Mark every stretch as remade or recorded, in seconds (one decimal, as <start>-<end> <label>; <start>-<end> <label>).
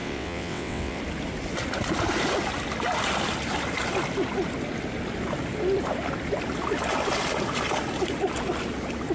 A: 0.0-1.0 remade; 1.0-9.1 recorded